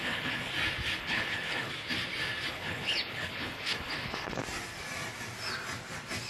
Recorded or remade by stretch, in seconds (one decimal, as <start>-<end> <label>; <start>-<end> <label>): 0.0-0.5 remade; 0.5-1.0 recorded; 1.0-1.7 remade; 1.7-2.5 recorded; 2.5-4.4 remade; 4.4-6.3 recorded